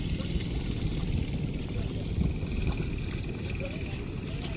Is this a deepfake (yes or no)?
no